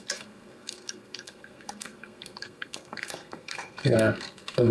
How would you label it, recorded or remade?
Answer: remade